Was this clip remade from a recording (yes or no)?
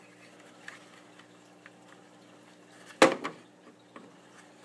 no